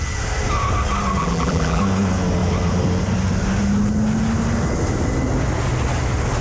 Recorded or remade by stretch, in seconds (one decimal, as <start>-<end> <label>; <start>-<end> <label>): 0.0-1.2 recorded; 1.2-1.8 remade; 1.8-6.4 recorded